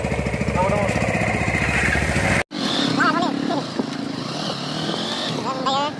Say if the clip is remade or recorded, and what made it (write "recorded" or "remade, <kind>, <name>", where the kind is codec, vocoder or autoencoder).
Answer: recorded